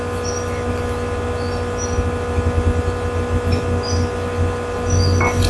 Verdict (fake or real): real